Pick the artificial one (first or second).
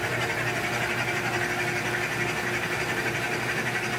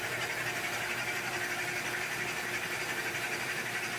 second